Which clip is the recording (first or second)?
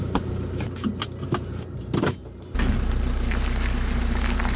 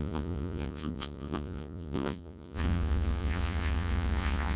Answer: first